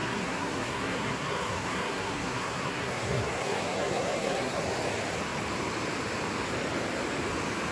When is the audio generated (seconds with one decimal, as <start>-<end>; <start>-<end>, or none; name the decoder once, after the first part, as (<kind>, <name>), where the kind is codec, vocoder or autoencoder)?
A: 0.0-4.6 (codec, SNAC)